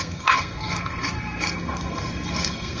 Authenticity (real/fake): fake